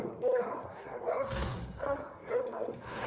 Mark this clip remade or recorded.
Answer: remade